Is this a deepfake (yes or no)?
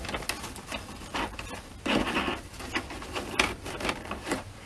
no